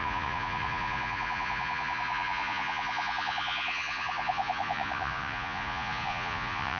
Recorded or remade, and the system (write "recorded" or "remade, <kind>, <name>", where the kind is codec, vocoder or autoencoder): remade, vocoder, Vocos